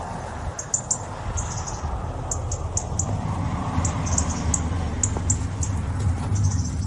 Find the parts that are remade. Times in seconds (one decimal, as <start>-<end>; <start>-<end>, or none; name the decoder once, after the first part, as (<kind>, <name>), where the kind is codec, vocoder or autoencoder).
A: none